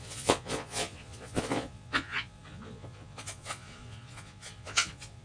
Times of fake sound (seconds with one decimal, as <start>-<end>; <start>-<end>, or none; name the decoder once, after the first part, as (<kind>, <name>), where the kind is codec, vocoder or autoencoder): 0.0-5.2 (vocoder, Vocos)